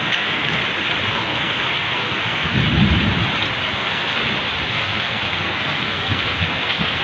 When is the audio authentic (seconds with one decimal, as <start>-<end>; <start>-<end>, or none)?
0.6-1.1; 2.6-3.7; 4.2-4.7